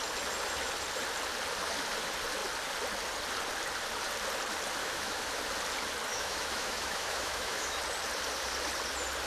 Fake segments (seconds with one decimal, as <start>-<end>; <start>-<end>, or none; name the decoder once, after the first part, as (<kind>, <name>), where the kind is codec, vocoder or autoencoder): 4.8-5.4 (autoencoder, DAC-VAE); 6.1-7.8